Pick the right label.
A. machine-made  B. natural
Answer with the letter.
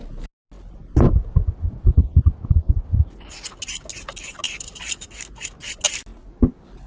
B